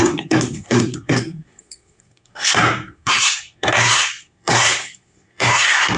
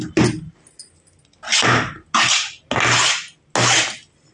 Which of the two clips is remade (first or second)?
first